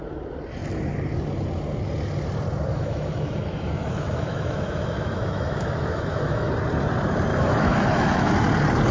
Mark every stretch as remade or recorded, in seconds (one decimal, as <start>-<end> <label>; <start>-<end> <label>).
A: 0.0-2.7 recorded; 2.7-6.5 remade; 6.5-7.3 recorded; 7.3-8.3 remade; 8.3-8.9 recorded